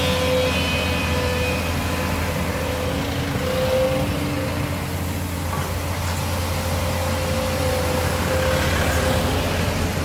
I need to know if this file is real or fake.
real